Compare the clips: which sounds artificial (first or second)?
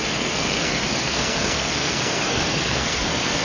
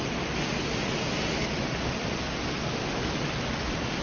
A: first